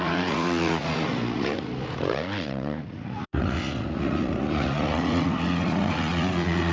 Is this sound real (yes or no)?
no